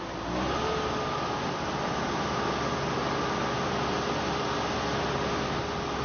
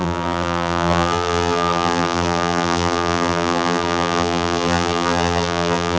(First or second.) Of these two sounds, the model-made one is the second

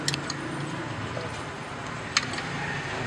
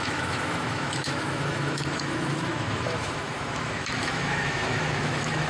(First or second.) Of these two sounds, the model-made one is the second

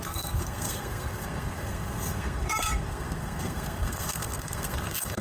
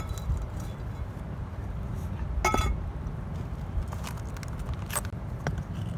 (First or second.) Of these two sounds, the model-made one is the first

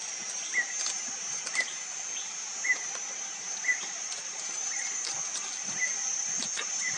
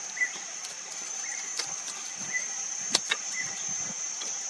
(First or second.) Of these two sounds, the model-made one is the second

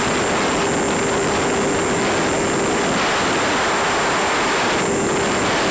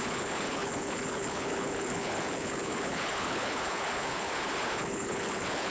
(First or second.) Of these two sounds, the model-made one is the second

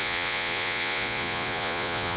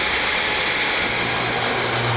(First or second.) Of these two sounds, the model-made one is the first